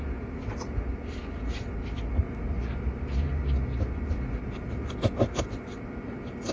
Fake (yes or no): no